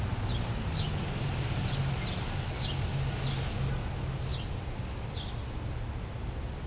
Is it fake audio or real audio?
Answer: real